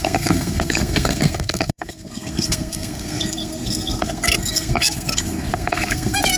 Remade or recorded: remade